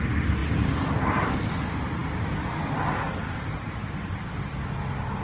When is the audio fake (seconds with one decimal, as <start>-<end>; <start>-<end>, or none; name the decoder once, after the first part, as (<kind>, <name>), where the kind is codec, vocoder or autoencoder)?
none